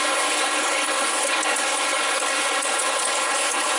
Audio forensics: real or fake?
fake